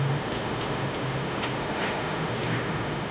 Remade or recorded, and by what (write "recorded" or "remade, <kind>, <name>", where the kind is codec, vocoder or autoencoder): remade, autoencoder, DAC-VAE